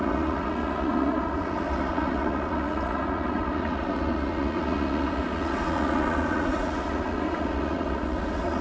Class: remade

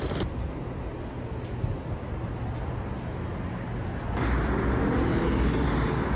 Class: recorded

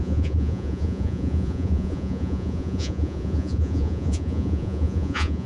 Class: remade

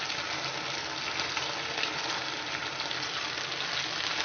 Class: recorded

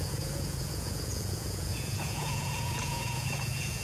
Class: remade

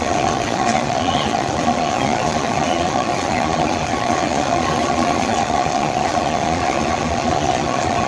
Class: remade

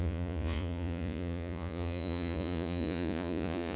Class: remade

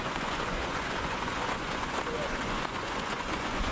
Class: remade